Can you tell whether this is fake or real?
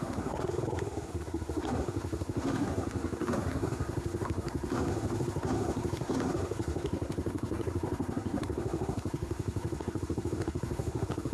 fake